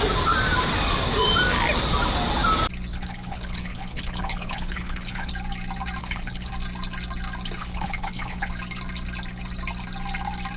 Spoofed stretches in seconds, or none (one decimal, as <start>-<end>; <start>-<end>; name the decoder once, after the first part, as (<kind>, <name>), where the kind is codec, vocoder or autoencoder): 2.9-5.3 (codec, HILCodec); 6.0-6.5; 7.6-8.5